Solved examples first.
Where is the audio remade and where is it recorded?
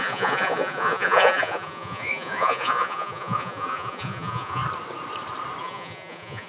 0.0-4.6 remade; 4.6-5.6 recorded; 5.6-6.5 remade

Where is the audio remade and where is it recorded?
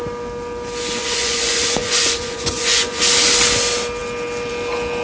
0.0-1.0 recorded; 1.0-3.0 remade; 3.0-5.0 recorded